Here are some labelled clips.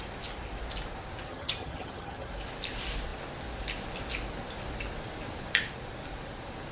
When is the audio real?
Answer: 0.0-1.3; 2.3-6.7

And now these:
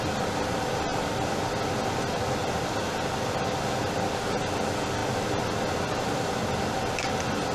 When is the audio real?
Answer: 0.0-7.5